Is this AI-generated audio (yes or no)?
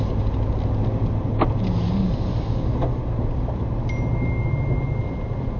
no